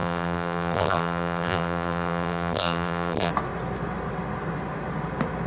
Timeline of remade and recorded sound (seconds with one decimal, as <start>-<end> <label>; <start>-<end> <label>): 0.0-3.3 remade; 3.3-5.5 recorded